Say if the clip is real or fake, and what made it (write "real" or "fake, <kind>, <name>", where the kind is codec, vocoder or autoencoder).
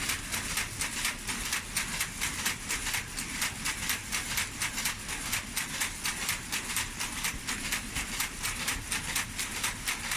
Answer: real